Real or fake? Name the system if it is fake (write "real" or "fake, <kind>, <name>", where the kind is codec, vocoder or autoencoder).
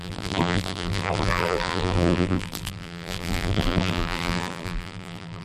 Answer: fake, vocoder, BigVGAN v2